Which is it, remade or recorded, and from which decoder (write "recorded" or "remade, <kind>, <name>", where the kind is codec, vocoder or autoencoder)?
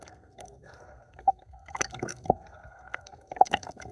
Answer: remade, codec, SNAC